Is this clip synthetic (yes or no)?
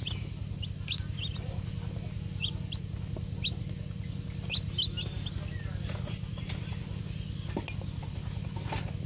no